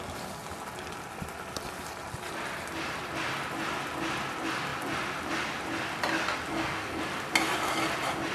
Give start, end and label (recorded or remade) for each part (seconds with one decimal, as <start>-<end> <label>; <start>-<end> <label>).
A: 0.0-6.5 recorded; 6.5-7.0 remade; 7.0-8.3 recorded